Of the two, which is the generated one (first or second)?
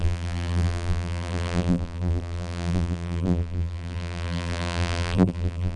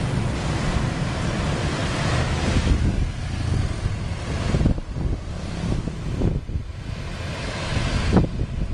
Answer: first